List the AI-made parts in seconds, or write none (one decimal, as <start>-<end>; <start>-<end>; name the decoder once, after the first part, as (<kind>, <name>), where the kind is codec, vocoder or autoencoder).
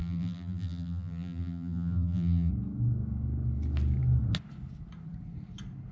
0.0-2.5 (vocoder, BigVGAN v2)